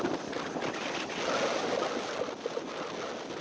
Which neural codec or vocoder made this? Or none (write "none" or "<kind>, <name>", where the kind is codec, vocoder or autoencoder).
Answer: none